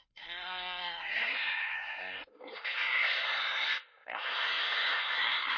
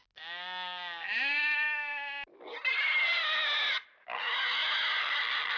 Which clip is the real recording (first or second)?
second